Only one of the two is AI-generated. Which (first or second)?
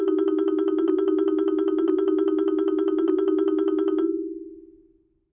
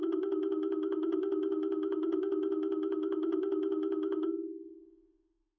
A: second